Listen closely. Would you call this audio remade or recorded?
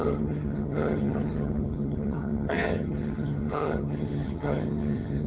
remade